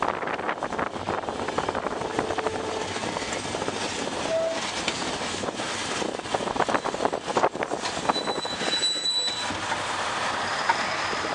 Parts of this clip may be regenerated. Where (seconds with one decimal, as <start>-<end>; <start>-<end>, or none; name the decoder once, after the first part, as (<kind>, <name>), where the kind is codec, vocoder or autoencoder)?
none